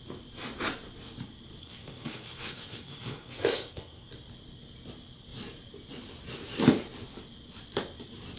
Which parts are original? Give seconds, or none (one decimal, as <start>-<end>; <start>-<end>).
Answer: 0.0-1.6; 4.1-8.4